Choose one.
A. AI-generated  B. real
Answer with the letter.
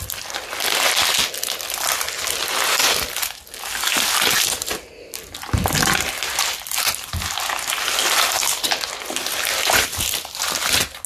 B